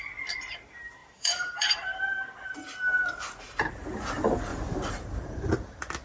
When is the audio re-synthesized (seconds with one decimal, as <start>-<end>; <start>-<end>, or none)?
1.0-2.1; 4.5-5.5